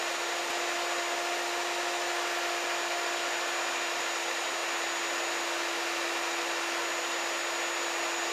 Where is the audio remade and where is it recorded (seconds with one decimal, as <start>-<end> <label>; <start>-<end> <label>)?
0.0-8.3 recorded